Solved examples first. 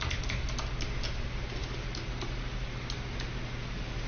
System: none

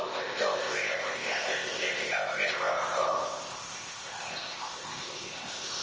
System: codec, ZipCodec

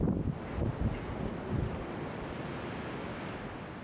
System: none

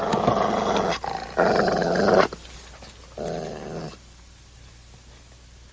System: none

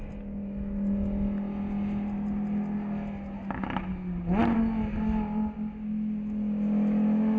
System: none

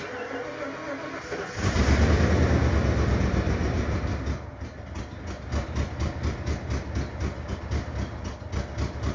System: none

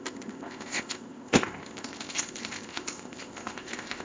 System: codec, ZipCodec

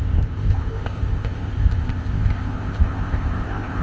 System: codec, ZipCodec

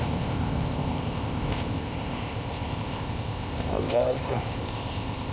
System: codec, ZipCodec